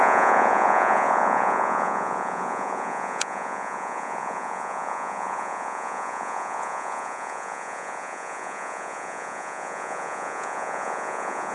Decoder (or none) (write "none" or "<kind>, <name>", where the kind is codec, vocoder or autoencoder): vocoder, Vocos